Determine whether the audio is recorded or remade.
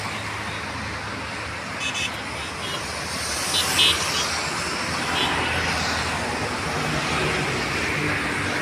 recorded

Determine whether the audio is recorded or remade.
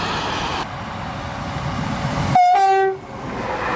recorded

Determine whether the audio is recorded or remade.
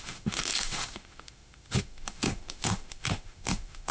remade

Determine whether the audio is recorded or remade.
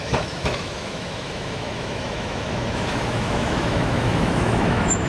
remade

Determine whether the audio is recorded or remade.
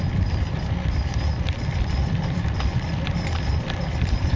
recorded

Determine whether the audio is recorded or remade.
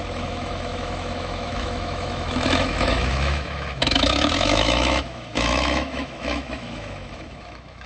remade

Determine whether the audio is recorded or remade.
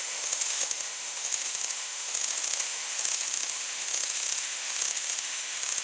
remade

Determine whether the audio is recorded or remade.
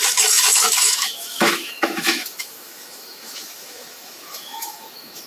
remade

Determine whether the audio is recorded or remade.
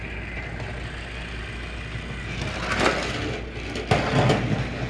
recorded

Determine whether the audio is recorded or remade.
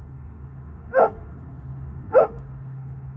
remade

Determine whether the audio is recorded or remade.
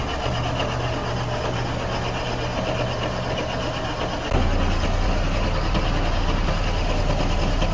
recorded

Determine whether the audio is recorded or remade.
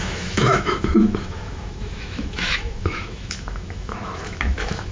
remade